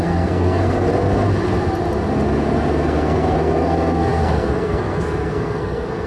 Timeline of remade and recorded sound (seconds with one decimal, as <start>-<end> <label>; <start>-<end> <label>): 0.0-0.9 remade; 0.9-2.7 recorded; 2.7-6.1 remade

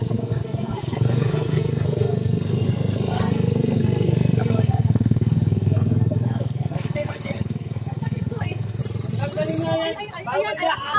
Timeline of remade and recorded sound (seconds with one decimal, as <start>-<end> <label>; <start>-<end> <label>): 0.0-8.8 remade; 8.8-10.6 recorded; 10.6-11.0 remade

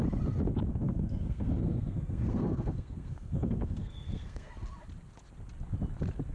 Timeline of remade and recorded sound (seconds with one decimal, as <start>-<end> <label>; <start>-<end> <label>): 0.0-0.7 recorded; 0.7-4.5 remade; 4.5-6.3 recorded

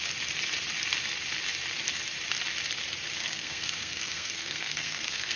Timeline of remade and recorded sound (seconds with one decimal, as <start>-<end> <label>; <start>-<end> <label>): 0.0-3.2 recorded; 3.2-5.4 remade

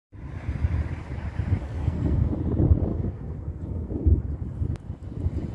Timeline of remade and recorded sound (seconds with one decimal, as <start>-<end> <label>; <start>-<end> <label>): 0.0-1.6 recorded; 1.6-2.3 remade; 2.3-2.9 recorded; 2.9-4.2 remade; 4.2-5.5 recorded

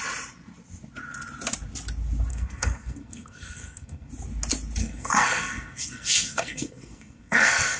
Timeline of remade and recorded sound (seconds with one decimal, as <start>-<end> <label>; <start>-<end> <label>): 0.0-2.3 recorded; 2.3-4.1 remade; 4.1-4.8 recorded; 4.8-7.8 remade

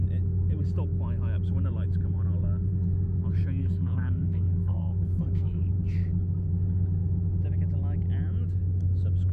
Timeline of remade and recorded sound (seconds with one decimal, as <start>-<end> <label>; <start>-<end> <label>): 0.0-3.6 recorded; 3.6-5.6 remade; 5.6-9.3 recorded